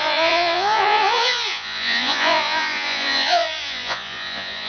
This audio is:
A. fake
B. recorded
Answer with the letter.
A